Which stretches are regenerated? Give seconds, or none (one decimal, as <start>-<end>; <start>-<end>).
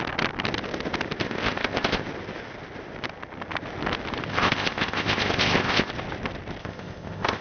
1.2-2.0; 4.3-5.9; 6.6-7.4